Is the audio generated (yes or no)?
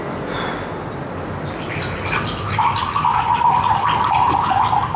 no